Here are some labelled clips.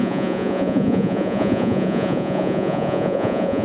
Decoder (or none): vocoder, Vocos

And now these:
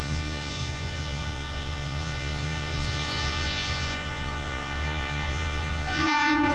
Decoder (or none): vocoder, Vocos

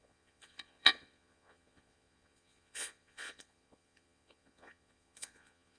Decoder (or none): vocoder, Vocos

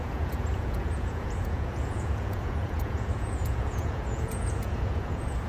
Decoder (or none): vocoder, Vocos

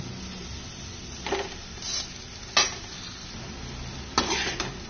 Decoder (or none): none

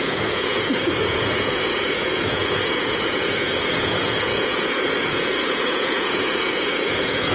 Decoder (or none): vocoder, Vocos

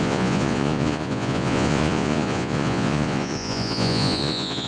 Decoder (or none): vocoder, Vocos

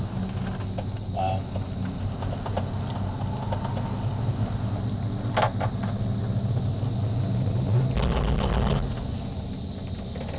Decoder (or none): none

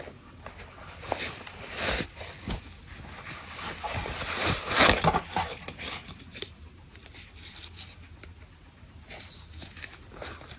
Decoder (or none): none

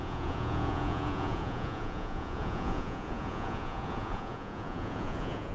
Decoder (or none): vocoder, Vocos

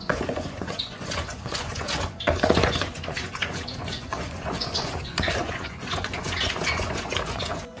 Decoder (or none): vocoder, Vocos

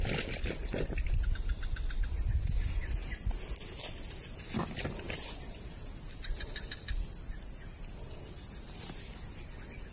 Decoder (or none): none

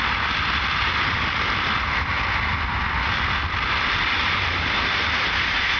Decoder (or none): none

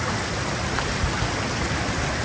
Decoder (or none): none